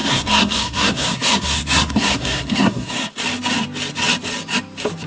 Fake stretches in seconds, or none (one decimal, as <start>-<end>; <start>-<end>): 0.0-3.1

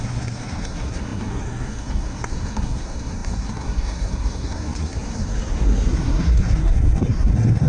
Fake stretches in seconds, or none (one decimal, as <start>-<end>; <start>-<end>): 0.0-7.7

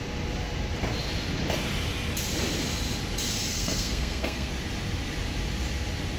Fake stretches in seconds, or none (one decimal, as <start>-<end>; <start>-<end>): 3.5-4.5